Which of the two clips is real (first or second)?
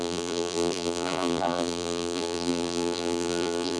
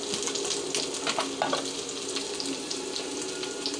second